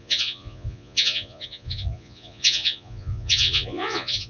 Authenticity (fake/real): fake